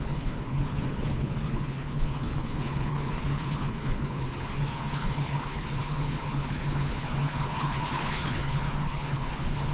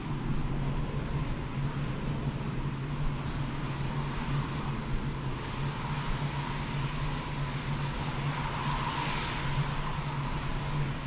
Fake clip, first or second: first